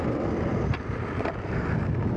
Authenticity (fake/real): real